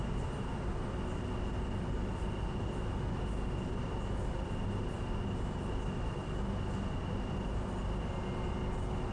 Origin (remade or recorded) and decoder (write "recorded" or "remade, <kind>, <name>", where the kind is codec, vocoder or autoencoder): recorded